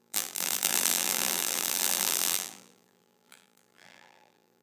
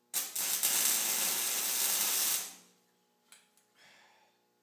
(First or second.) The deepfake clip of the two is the first